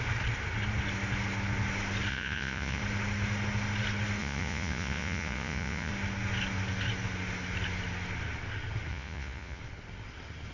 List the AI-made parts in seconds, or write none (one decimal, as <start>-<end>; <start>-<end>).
2.1-2.8; 4.2-5.9; 8.9-9.6